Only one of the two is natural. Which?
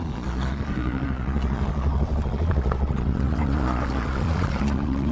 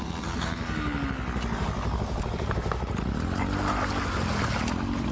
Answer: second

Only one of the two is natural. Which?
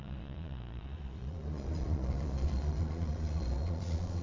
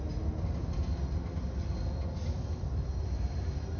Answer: second